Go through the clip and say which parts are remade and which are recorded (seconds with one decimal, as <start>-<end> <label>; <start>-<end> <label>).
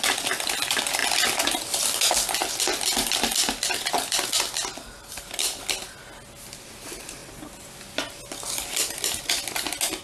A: 0.0-10.0 recorded